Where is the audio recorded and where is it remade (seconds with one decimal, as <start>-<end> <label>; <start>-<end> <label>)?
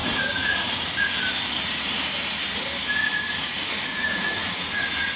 0.0-1.1 remade; 1.1-3.9 recorded; 3.9-4.7 remade; 4.7-5.2 recorded